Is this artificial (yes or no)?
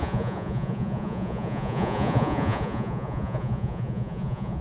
yes